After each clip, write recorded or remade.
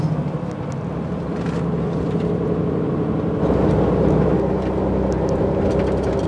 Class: recorded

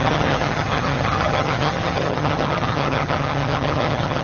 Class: remade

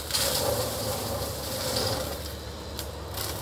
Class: recorded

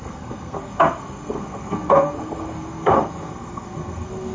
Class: remade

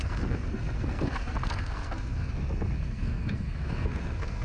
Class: remade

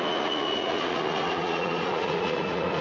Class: remade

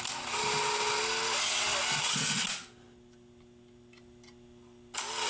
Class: recorded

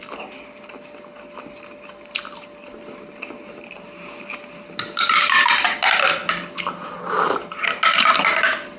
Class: recorded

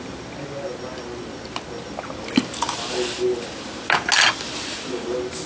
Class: recorded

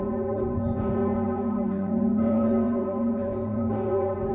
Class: remade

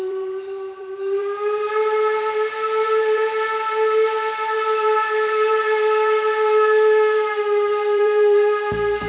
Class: remade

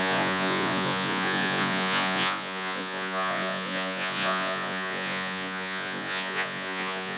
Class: remade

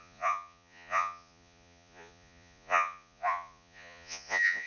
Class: remade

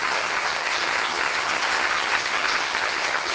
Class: remade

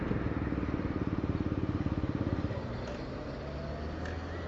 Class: recorded